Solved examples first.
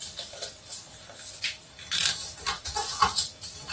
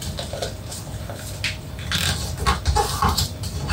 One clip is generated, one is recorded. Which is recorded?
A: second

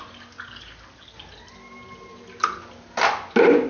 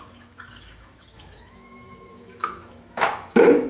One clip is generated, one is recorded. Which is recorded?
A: first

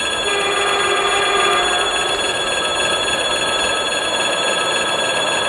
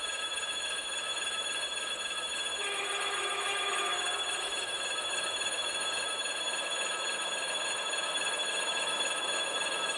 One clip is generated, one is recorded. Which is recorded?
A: first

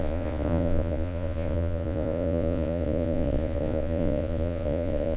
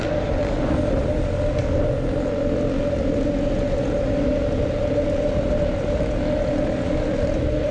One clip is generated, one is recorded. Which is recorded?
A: second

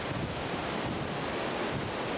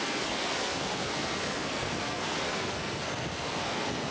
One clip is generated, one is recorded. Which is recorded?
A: first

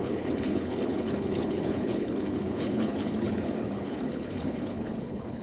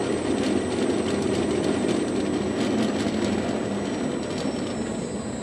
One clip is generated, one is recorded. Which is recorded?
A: second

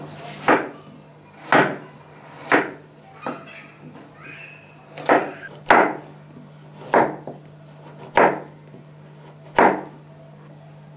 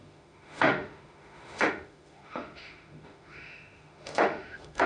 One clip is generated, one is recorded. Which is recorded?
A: first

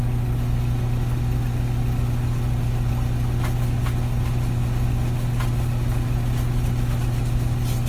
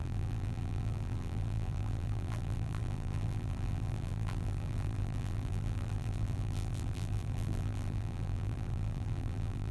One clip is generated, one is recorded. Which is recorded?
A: first